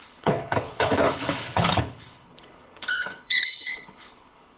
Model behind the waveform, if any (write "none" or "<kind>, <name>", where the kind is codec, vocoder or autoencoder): codec, HILCodec